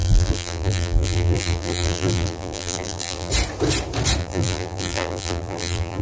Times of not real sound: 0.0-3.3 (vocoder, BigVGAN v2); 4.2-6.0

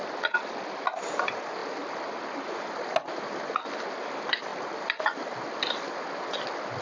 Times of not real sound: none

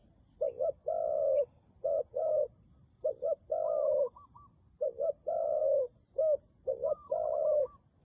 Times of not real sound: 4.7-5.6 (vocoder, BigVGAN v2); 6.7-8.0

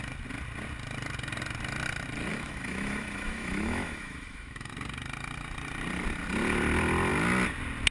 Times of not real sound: 2.3-4.7 (autoencoder, DAC-VAE)

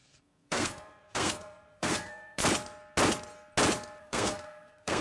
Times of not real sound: 0.0-2.4 (codec, SNAC); 4.0-5.0

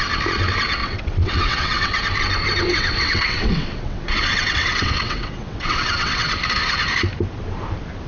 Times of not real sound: 0.8-1.9 (vocoder, WaveNeXt); 2.7-6.3

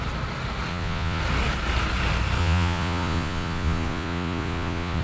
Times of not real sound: 0.7-1.2 (vocoder, Vocos); 2.4-5.0